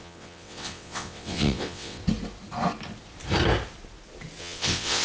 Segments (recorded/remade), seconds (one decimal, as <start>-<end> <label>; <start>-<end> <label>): 0.0-2.0 remade; 2.0-4.4 recorded; 4.4-5.0 remade